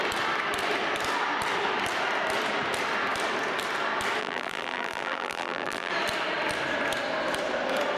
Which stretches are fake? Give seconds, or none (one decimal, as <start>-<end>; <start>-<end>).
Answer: 4.2-5.9